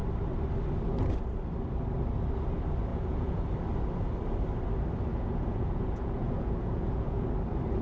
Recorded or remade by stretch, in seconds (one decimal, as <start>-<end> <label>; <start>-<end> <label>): 0.0-2.9 recorded; 2.9-3.5 remade; 3.5-5.1 recorded; 5.1-7.3 remade; 7.3-7.8 recorded